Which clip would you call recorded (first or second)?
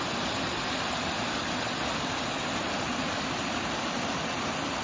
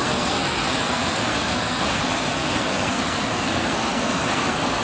first